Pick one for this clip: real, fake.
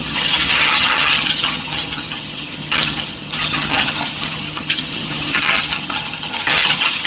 fake